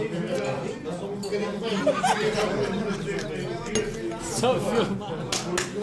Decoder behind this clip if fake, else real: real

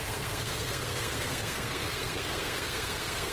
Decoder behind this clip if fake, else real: fake, codec, SNAC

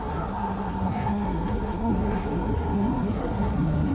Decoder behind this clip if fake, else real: fake, codec, SNAC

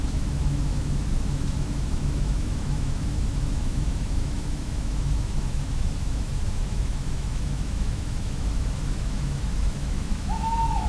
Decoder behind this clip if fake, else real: fake, autoencoder, DAC-VAE